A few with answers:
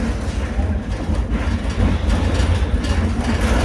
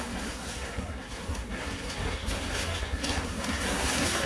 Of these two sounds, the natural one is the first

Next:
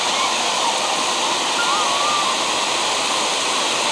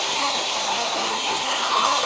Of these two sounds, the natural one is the first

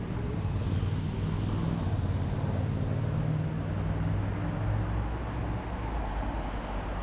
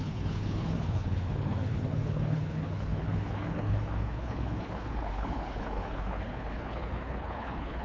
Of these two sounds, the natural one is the first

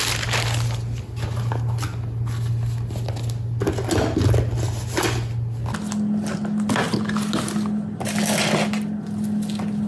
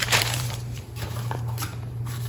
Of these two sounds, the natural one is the first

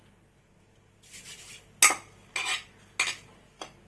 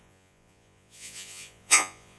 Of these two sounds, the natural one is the first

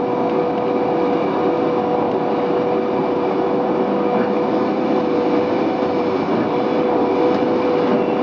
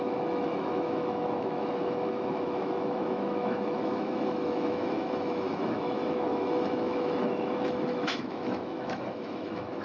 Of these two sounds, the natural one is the first